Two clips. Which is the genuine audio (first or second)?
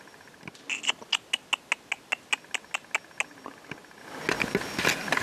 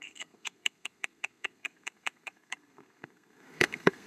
first